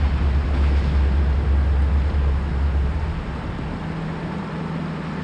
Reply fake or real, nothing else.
real